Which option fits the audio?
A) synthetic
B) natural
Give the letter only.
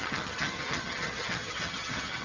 A